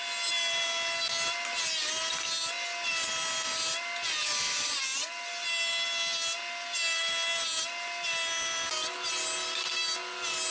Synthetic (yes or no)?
no